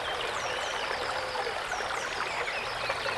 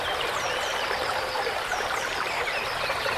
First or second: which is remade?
second